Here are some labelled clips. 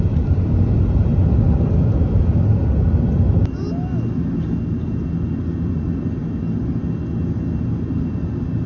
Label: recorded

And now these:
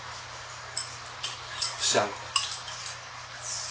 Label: recorded